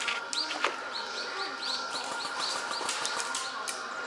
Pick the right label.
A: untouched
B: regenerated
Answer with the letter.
A